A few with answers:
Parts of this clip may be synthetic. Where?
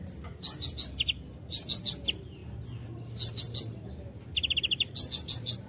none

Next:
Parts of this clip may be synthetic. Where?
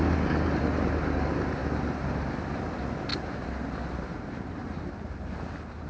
1.6-2.3 (vocoder, BigVGAN v2); 3.1-4.9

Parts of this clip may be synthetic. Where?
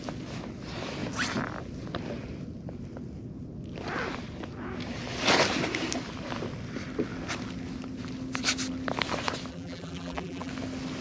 9.5-10.5 (vocoder, BigVGAN v2)